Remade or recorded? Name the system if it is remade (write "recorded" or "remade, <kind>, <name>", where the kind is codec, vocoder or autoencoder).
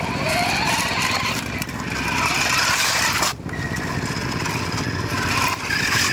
recorded